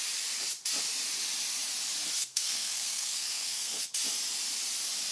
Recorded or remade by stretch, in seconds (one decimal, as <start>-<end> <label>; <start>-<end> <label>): 0.0-2.2 recorded; 2.2-3.9 remade; 3.9-5.1 recorded